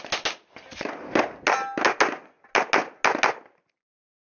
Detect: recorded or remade recorded